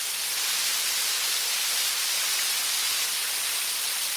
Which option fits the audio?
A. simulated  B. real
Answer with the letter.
B